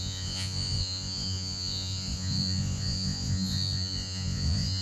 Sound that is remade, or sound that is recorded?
remade